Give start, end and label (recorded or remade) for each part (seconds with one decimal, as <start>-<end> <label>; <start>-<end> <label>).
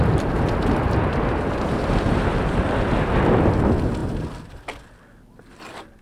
0.0-1.0 recorded; 1.0-3.3 remade; 3.3-6.0 recorded